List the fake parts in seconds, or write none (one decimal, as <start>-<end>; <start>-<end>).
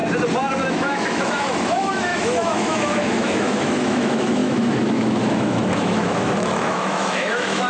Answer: 0.7-7.7